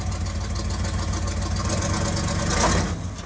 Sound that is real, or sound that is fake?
real